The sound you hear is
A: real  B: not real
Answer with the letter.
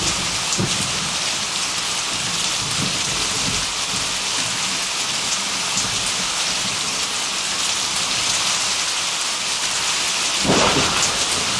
A